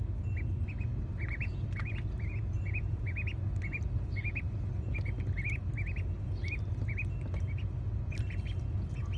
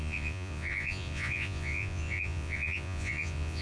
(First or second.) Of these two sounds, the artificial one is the second